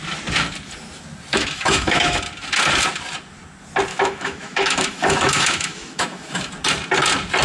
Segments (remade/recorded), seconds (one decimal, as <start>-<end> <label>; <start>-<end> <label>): 0.0-1.3 recorded; 1.3-2.2 remade; 2.2-3.9 recorded; 3.9-6.5 remade; 6.5-7.4 recorded